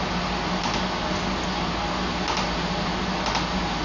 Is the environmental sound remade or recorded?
recorded